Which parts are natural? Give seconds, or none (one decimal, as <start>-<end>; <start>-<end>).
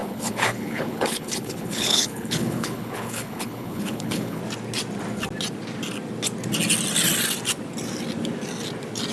4.4-9.1